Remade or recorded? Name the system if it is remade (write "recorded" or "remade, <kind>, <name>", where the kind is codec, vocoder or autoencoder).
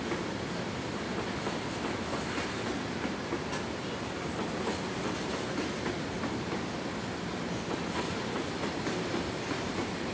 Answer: recorded